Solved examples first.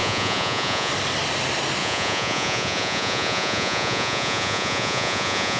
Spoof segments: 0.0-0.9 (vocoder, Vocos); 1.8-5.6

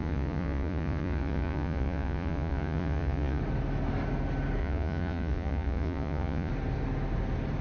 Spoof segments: 0.0-3.4 (vocoder, Vocos); 4.6-6.5